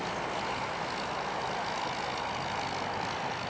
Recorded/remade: recorded